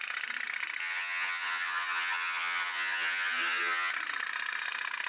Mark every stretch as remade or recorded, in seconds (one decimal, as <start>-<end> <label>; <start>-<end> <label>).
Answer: 0.0-0.8 recorded; 0.8-3.9 remade; 3.9-5.1 recorded